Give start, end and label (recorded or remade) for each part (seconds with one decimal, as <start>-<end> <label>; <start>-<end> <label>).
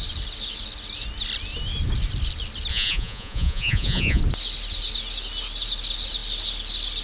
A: 0.0-2.7 recorded; 2.7-4.2 remade; 4.2-7.0 recorded